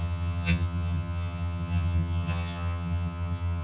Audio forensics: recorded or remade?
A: remade